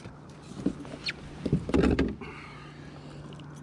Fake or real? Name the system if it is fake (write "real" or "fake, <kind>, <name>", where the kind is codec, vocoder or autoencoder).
real